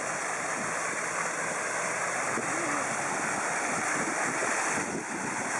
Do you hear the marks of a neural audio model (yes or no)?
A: no